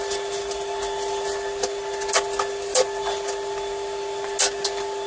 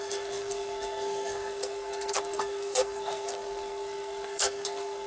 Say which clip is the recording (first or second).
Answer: first